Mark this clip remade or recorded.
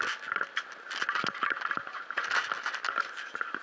recorded